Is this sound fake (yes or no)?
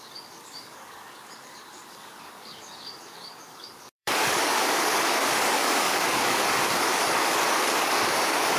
yes